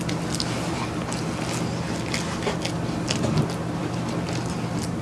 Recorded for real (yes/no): yes